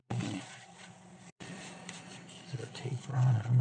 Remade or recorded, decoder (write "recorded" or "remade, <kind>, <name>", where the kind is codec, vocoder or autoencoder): remade, vocoder, Vocos